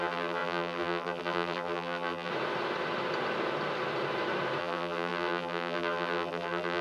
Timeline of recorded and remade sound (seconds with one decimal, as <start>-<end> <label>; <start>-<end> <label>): 0.0-2.3 remade; 2.3-4.6 recorded; 4.6-6.8 remade